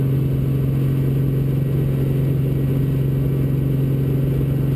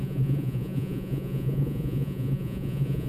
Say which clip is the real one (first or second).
first